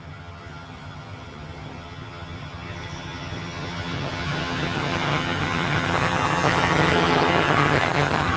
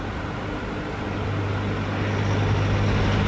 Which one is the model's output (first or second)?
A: first